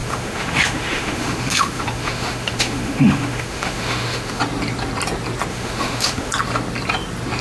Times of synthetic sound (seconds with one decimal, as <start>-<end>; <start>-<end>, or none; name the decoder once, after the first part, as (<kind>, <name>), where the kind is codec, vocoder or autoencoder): 0.0-4.4 (autoencoder, DAC-VAE); 5.5-6.3